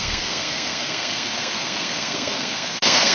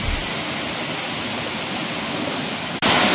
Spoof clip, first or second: first